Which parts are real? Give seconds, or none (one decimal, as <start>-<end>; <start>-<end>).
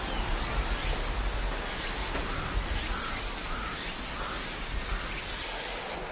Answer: 0.0-6.1